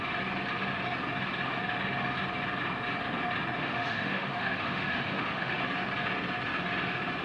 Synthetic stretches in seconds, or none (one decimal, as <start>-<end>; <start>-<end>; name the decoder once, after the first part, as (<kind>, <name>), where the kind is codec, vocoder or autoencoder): 3.6-5.6 (autoencoder, DAC-VAE)

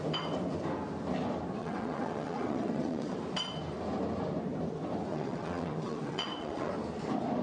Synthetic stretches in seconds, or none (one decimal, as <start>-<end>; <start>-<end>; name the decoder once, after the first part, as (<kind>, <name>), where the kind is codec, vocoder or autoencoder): 1.6-3.2 (vocoder, WaveNeXt); 5.1-6.7